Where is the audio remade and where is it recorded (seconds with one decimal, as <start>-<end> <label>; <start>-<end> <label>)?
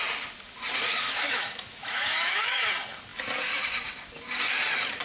0.0-0.9 recorded; 0.9-2.7 remade; 2.7-5.0 recorded